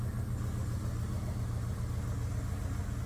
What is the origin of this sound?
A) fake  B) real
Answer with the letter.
B